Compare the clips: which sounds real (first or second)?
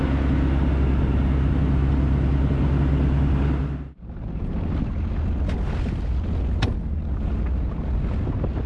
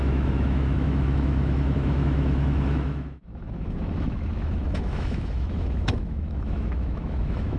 first